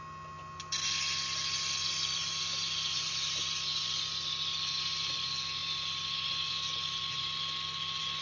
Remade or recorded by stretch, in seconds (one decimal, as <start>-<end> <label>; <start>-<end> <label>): 0.0-1.8 recorded; 1.8-3.4 remade; 3.4-8.2 recorded